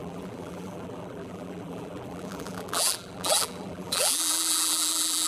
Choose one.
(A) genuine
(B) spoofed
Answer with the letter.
B